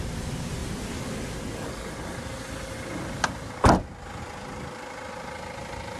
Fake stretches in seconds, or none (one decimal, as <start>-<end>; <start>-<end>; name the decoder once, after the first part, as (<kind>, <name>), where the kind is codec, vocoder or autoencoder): none